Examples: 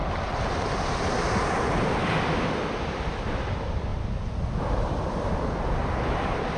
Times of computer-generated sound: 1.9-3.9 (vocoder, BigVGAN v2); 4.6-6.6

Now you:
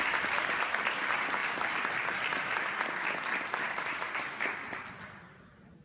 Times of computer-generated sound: none